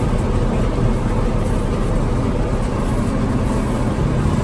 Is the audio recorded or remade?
recorded